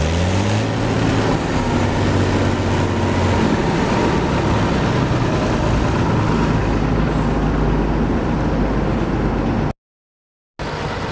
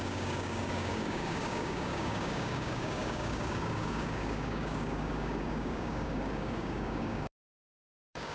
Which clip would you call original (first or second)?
first